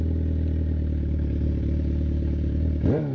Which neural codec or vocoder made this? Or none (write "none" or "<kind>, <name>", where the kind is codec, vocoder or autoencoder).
none